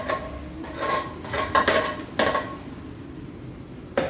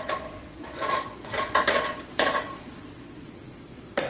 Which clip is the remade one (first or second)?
second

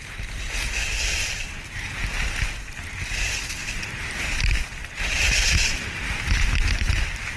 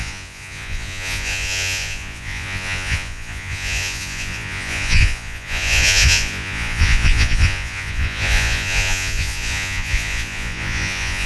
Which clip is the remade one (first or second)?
second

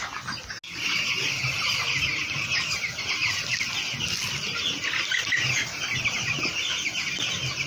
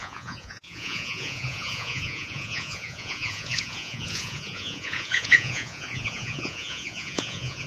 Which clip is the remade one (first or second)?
second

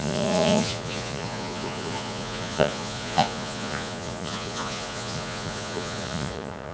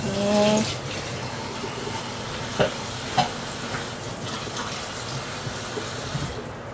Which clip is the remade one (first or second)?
first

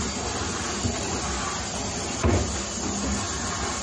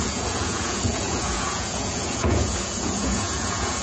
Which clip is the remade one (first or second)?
second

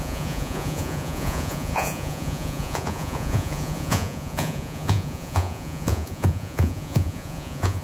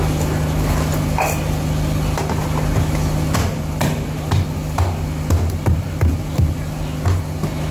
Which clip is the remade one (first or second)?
first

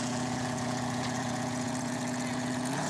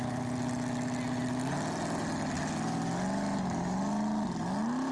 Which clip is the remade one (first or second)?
first